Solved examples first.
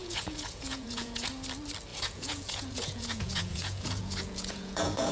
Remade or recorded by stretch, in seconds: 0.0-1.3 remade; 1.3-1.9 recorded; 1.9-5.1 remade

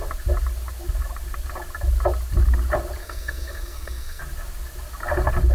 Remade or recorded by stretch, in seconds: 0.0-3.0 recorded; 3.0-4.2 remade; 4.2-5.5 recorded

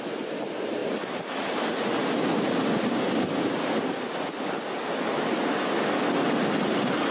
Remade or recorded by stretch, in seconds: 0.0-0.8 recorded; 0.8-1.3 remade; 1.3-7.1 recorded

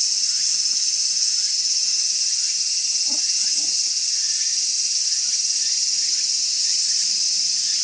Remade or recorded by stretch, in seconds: 0.0-7.8 recorded